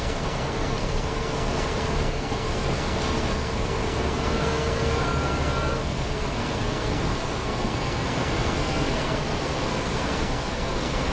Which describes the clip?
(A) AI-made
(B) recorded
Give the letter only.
A